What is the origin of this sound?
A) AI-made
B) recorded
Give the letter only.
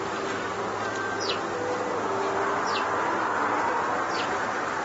B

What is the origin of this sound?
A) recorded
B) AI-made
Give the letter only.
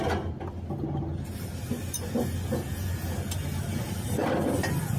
A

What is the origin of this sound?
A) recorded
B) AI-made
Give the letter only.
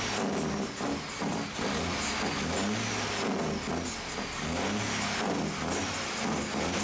A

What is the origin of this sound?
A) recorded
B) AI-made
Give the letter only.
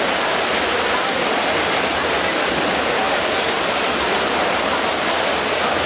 B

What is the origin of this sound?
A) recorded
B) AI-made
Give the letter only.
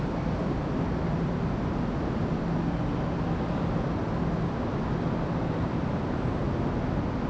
A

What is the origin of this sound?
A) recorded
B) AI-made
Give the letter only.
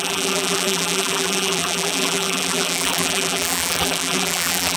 B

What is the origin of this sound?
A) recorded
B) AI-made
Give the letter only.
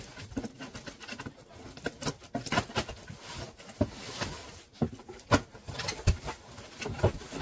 A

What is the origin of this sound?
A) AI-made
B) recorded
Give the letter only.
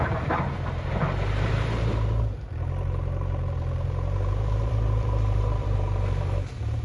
A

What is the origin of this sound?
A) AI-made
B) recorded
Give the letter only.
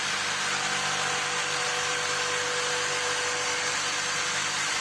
B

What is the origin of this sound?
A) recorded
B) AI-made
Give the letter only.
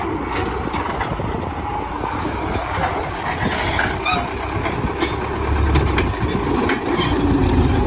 A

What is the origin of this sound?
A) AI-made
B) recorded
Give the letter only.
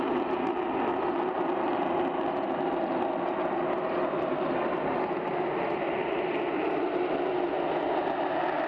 B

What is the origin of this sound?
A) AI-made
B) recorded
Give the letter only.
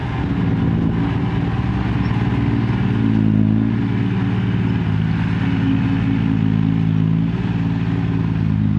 B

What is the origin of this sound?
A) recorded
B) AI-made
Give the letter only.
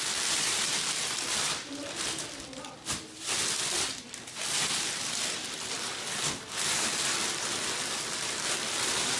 B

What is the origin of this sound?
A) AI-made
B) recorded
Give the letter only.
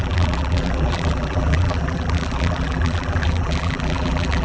A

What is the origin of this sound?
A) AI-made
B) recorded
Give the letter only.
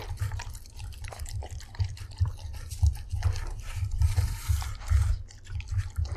A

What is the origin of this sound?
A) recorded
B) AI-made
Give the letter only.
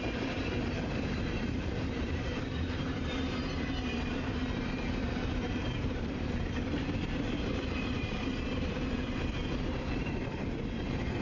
B